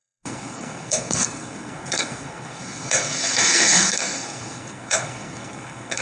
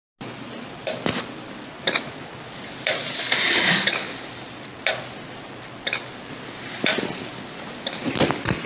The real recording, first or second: second